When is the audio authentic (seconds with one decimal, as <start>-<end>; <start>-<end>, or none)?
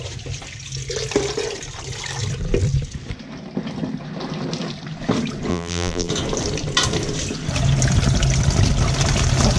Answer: 0.0-5.5; 6.1-9.6